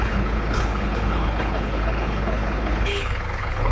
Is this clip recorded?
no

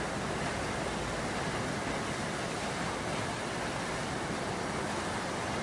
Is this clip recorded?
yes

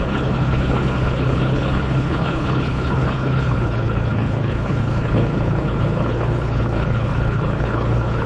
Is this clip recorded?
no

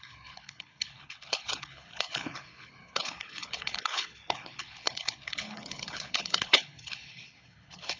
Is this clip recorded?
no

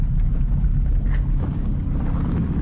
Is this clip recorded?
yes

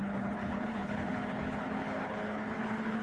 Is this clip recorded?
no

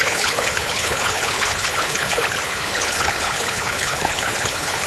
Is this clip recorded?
no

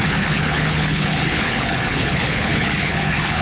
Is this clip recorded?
no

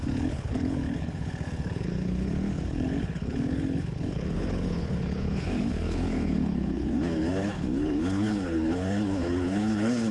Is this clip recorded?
no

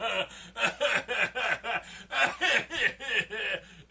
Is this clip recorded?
yes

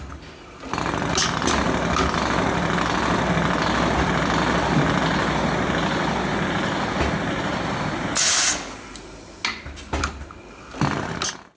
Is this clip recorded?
yes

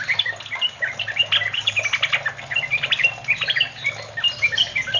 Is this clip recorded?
yes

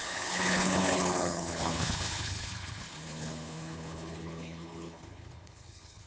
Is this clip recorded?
no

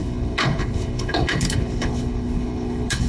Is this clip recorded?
no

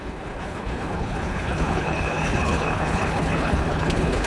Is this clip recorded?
no